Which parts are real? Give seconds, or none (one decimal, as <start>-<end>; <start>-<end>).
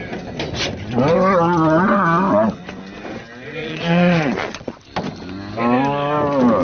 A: 0.0-3.6; 4.8-6.6